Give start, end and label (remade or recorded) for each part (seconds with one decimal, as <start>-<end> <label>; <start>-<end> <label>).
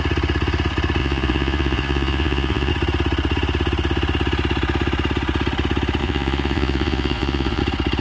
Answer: 0.0-1.0 recorded; 1.0-2.7 remade; 2.7-6.0 recorded; 6.0-7.6 remade; 7.6-8.0 recorded